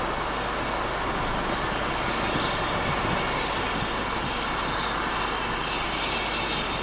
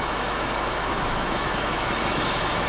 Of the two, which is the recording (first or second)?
first